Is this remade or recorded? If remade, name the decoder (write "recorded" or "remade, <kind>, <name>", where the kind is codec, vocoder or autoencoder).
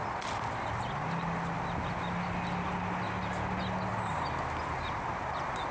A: recorded